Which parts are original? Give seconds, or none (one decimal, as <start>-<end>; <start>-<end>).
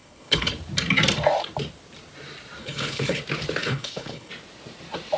0.5-2.6; 3.2-3.6; 4.3-5.2